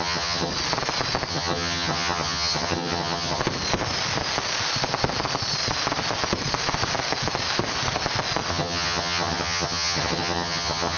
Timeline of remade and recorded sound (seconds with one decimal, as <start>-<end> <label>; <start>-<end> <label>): 0.0-0.5 remade; 0.5-1.3 recorded; 1.3-3.4 remade; 3.4-8.5 recorded; 8.5-11.0 remade